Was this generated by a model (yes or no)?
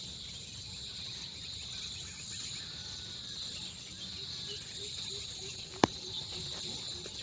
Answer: no